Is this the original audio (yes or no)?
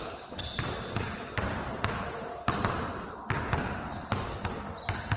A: yes